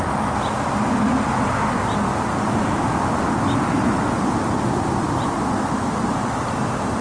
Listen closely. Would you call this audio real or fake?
real